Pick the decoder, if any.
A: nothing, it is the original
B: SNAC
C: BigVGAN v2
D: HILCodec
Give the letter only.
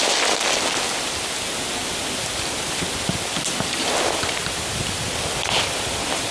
A